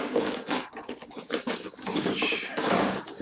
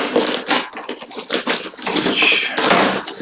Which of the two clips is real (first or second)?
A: second